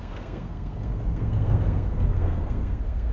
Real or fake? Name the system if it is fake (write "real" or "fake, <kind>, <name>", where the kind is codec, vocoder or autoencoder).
fake, codec, SNAC